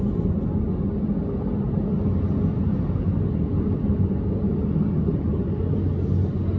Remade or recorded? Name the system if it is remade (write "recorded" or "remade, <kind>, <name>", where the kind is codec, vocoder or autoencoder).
recorded